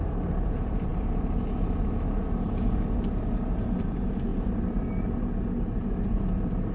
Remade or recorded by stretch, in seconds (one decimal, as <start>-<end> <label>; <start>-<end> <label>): 0.0-6.7 recorded